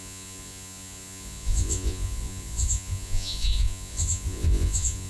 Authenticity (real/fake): fake